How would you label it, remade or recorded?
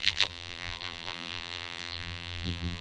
remade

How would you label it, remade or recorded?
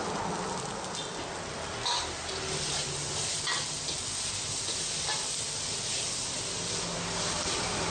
recorded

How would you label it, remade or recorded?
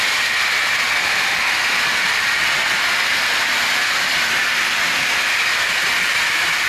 recorded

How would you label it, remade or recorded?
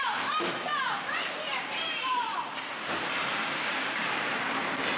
remade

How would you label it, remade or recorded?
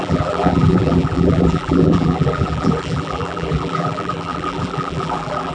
remade